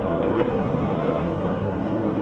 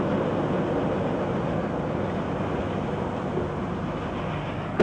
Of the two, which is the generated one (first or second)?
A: first